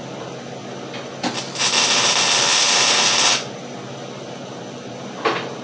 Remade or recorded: recorded